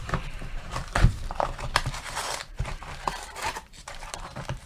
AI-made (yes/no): yes